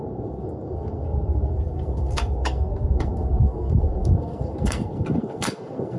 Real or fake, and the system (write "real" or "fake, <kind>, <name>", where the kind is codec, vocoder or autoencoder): fake, codec, SNAC